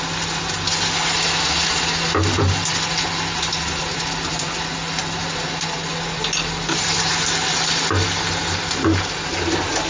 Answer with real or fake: real